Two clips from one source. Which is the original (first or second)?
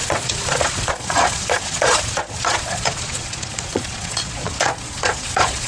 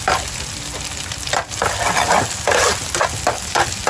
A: second